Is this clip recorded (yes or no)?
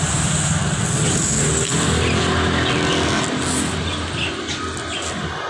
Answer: yes